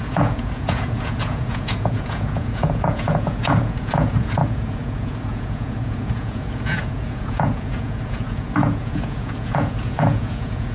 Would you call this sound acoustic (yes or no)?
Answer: no